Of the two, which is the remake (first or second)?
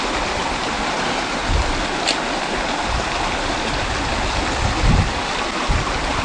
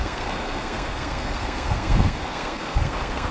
second